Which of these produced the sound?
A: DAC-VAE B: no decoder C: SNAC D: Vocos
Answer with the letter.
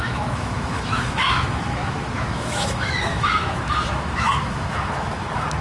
A